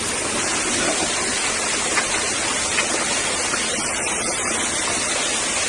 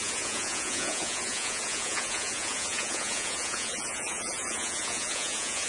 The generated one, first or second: second